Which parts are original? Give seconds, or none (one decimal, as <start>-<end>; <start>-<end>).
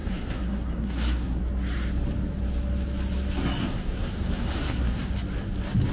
1.4-3.6; 5.1-5.9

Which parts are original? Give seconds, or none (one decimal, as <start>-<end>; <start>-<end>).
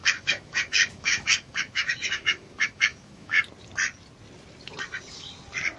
3.4-5.8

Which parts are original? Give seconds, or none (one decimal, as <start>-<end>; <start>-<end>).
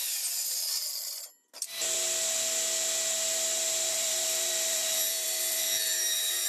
0.0-3.9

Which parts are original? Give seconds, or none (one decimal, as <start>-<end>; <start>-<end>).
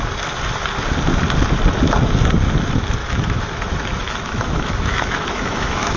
0.0-3.0